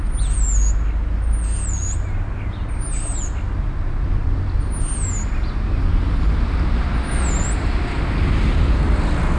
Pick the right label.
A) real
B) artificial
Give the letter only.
A